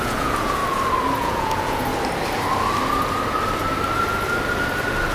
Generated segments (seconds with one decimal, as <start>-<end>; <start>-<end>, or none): 0.0-0.6; 1.2-1.9